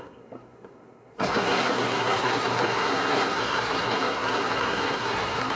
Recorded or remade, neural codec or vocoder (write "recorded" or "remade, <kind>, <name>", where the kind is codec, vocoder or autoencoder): remade, codec, SNAC